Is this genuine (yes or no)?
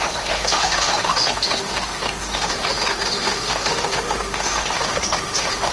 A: no